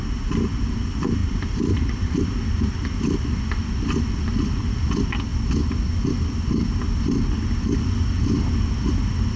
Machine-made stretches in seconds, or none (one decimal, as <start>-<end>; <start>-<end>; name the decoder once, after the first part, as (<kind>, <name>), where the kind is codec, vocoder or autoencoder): 1.2-2.2 (vocoder, BigVGAN v2)

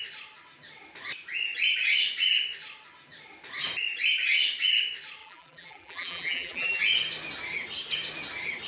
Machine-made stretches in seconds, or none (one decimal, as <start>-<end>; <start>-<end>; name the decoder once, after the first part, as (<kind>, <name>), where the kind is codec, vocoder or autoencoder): 5.2-6.8 (vocoder, BigVGAN v2)